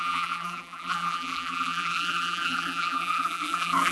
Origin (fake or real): fake